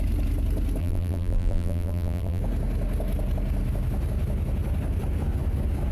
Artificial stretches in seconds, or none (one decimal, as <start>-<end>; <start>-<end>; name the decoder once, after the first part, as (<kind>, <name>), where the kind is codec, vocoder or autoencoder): 0.8-2.4 (vocoder, BigVGAN v2)

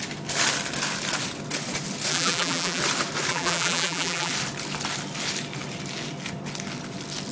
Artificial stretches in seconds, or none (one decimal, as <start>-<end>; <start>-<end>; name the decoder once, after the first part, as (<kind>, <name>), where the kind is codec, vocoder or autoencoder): 2.1-2.8 (vocoder, BigVGAN v2); 3.3-4.3

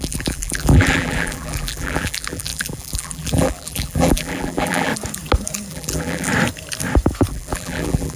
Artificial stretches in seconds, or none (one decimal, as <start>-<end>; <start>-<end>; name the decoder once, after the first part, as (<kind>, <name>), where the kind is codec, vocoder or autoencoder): 0.0-4.9 (vocoder, BigVGAN v2); 5.7-6.3; 7.3-8.2